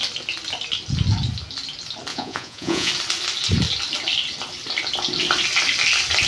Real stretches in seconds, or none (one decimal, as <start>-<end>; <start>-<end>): 0.0-2.1; 2.9-6.3

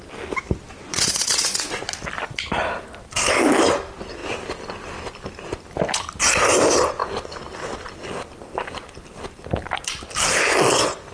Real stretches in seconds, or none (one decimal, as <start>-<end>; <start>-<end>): 0.0-0.8; 1.7-11.1

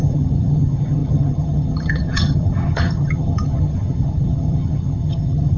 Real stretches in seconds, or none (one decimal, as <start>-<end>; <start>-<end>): none

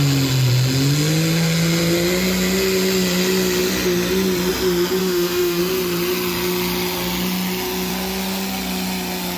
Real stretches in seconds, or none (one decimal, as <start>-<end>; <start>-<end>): 0.0-5.0; 5.6-9.4

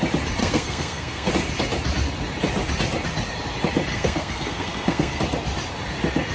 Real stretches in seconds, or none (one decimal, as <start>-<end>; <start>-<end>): 0.0-0.4; 1.3-3.9; 5.2-6.3